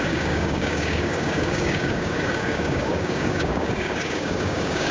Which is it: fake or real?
fake